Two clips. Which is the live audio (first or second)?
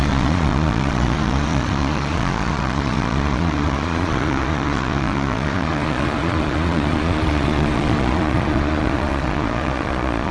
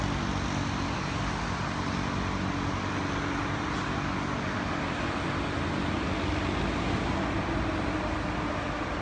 second